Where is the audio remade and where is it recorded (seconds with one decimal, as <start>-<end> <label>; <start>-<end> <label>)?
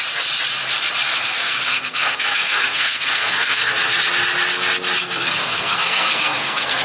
0.0-1.1 recorded; 1.1-3.7 remade; 3.7-5.0 recorded; 5.0-6.8 remade